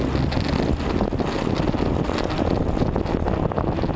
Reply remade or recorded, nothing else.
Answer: recorded